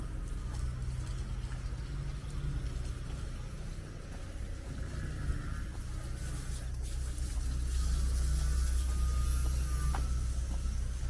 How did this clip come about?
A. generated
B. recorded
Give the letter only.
B